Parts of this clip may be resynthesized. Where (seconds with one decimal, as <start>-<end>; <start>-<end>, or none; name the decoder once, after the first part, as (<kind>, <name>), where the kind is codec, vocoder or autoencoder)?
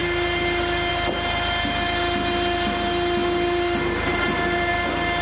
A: none